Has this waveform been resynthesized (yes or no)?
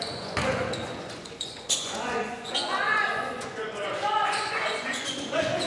yes